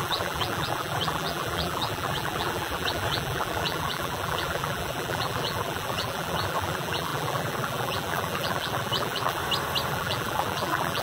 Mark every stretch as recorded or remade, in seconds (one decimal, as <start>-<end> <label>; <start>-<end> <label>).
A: 0.0-9.4 remade; 9.4-9.9 recorded; 9.9-11.0 remade